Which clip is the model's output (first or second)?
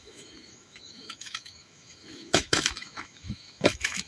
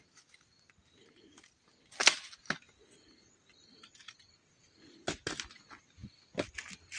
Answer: first